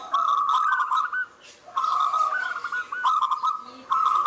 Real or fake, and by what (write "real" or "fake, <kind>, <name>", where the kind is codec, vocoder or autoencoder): real